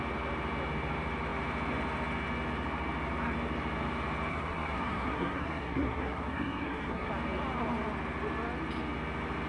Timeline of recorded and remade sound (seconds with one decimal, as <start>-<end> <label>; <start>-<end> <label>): 0.0-4.3 recorded; 4.3-7.1 remade; 7.1-9.5 recorded